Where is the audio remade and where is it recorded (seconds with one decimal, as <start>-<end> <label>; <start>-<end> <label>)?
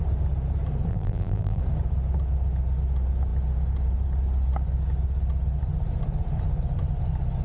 0.0-0.9 recorded; 0.9-1.6 remade; 1.6-7.4 recorded